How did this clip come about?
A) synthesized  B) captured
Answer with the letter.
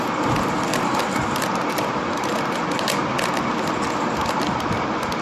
B